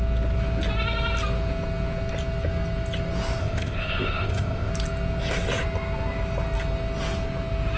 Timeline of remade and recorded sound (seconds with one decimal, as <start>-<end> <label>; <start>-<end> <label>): 0.0-3.4 recorded; 3.4-4.7 remade; 4.7-7.8 recorded